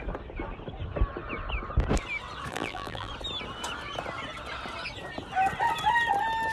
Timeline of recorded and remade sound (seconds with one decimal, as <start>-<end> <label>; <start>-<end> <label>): 0.0-2.5 recorded; 2.5-3.1 remade; 3.1-6.5 recorded